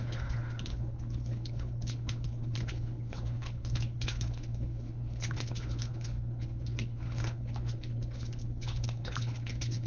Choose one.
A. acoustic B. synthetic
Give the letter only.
B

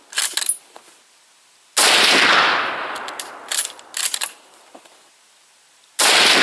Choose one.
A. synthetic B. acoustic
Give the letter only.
B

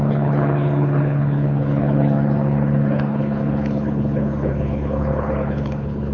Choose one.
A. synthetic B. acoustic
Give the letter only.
A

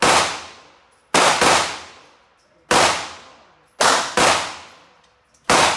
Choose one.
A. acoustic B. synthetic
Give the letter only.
A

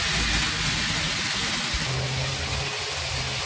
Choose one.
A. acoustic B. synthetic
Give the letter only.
A